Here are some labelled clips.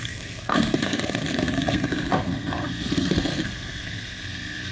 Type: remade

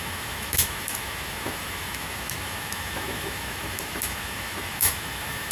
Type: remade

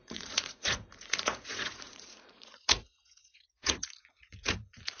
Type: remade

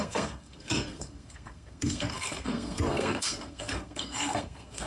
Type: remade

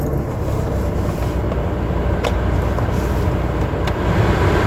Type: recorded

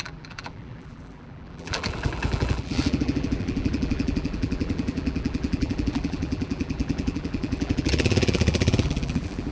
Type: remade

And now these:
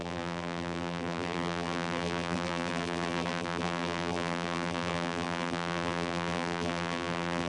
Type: remade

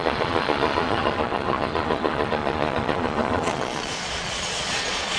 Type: remade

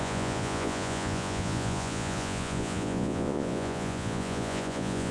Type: remade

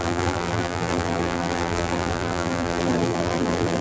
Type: remade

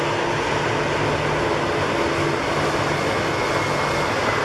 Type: recorded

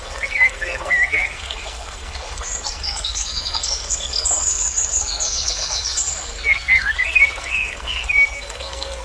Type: remade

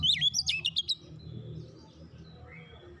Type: recorded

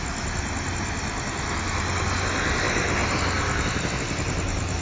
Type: recorded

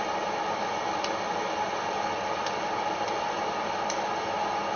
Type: recorded